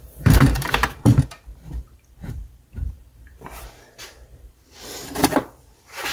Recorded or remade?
remade